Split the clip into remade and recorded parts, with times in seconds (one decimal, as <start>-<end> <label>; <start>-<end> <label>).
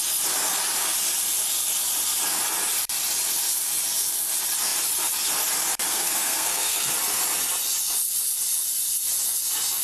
0.0-5.9 recorded; 5.9-6.9 remade; 6.9-9.8 recorded